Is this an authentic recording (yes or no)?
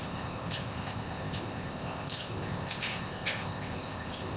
no